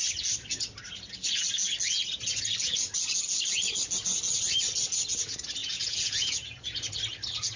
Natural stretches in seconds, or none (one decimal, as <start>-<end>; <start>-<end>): 0.0-5.6; 6.8-7.6